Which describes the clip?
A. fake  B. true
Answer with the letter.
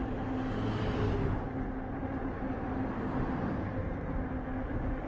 B